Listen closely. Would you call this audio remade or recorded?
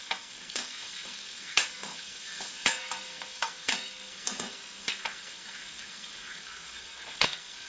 remade